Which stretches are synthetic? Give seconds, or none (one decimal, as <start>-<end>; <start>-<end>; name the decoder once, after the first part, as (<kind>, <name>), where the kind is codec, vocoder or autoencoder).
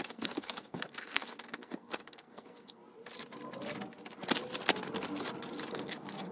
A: 0.0-2.8 (codec, SNAC); 5.7-6.3